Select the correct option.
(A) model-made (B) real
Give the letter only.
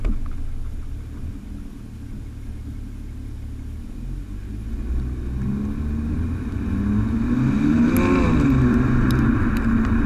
B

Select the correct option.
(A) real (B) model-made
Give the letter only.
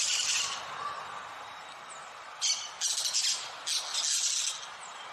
A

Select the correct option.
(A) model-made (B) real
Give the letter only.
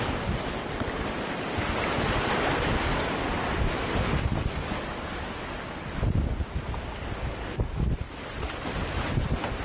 B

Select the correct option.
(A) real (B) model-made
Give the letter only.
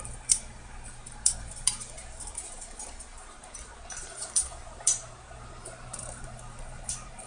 B